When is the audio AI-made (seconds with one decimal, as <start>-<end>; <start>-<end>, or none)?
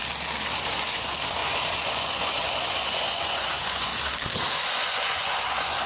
0.5-3.9; 4.5-5.9